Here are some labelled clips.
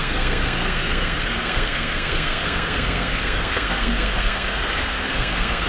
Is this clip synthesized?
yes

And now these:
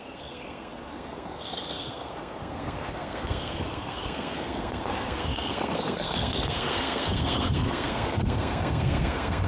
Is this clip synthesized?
yes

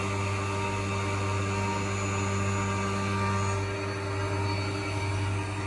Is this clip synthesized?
no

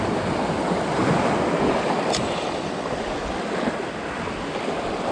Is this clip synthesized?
no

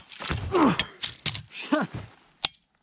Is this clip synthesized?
no